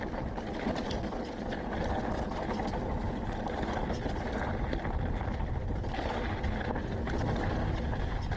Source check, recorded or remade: recorded